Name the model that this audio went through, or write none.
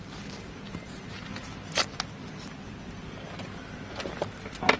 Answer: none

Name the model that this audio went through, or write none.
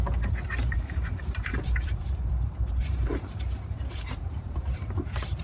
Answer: vocoder, BigVGAN v2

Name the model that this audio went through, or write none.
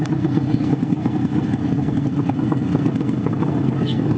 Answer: codec, SNAC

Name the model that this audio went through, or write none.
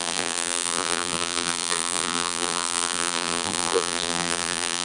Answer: vocoder, BigVGAN v2